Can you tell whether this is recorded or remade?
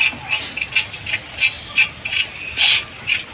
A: recorded